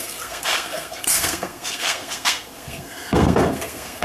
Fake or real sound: fake